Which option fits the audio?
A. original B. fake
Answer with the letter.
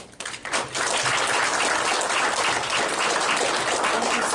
A